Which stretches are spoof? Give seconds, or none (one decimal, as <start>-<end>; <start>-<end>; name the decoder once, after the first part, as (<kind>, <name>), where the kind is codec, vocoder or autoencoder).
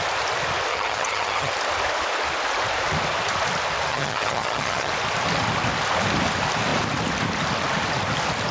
0.7-1.5 (vocoder, HiFi-GAN); 3.9-4.9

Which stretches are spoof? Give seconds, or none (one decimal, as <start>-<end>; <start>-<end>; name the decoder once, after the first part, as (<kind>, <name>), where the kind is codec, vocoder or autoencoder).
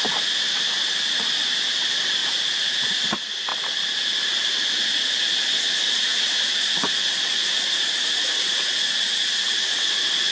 2.2-3.0 (vocoder, Vocos); 6.1-9.8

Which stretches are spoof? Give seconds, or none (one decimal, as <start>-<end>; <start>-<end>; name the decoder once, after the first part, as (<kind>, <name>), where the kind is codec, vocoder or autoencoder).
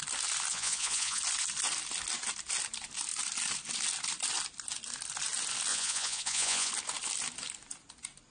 0.5-1.2 (vocoder, Vocos); 5.7-6.7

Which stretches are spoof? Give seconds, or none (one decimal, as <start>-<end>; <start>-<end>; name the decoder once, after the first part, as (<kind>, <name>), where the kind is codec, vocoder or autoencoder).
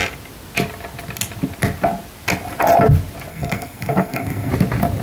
3.3-4.5 (codec, SNAC)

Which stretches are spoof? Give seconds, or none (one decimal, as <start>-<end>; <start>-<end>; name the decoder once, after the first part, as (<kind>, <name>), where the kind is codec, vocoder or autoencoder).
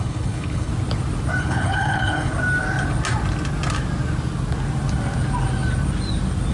0.0-0.7 (codec, HILCodec); 1.4-2.3